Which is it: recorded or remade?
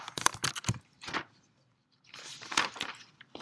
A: remade